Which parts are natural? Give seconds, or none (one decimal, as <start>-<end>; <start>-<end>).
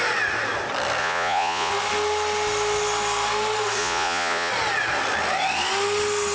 0.0-1.0; 1.7-3.8; 4.5-6.3